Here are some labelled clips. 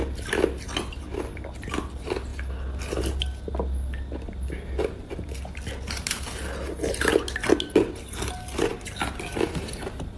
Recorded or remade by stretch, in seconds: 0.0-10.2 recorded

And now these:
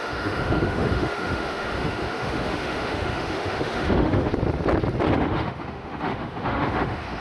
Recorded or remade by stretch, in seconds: 0.0-4.3 remade; 4.3-5.1 recorded; 5.1-7.2 remade

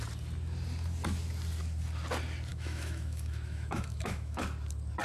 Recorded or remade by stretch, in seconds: 0.0-2.5 recorded; 2.5-4.4 remade; 4.4-5.0 recorded

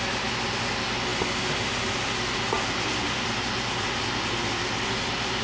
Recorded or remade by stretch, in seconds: 0.0-5.4 recorded